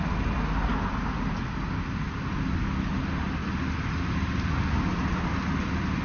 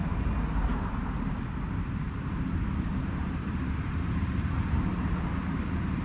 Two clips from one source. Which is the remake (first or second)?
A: second